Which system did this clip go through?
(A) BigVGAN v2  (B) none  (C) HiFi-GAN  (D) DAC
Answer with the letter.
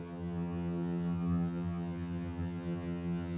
C